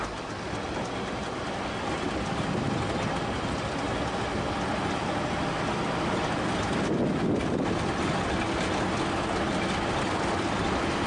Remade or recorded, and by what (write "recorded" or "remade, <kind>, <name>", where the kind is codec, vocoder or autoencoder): recorded